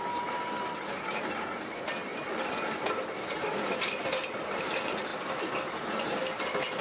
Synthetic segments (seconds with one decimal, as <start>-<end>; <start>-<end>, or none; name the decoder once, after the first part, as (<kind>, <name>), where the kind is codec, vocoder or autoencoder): 5.1-5.9 (vocoder, BigVGAN v2)